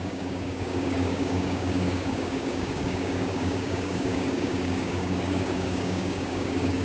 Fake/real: fake